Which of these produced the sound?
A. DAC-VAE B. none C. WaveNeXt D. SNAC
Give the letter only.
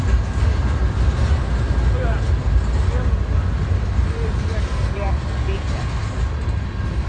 B